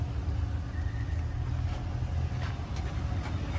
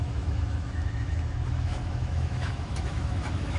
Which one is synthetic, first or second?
second